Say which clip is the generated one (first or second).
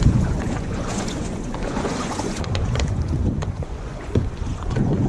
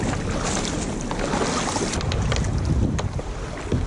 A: first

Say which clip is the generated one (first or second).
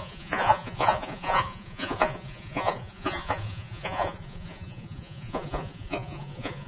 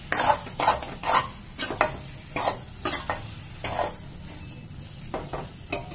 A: first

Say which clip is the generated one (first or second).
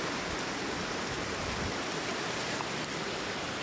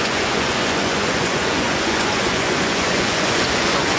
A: second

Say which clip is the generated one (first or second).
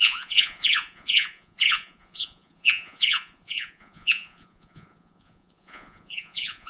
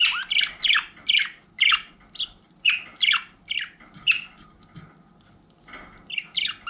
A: first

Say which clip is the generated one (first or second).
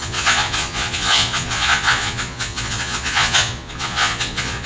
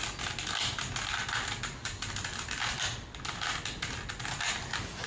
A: first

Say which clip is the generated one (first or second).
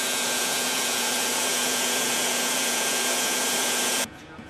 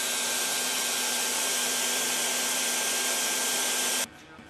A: first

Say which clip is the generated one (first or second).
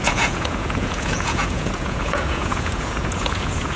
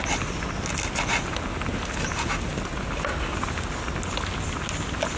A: first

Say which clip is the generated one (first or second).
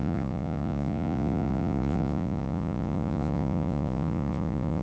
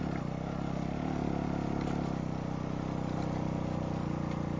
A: first